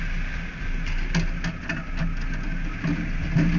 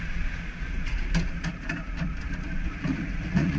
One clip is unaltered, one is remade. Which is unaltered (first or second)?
first